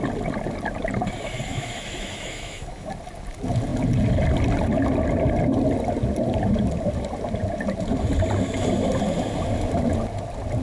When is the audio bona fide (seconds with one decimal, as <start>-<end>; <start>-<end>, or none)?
0.0-1.5; 2.9-10.6